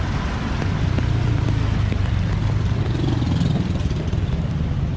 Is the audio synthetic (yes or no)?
no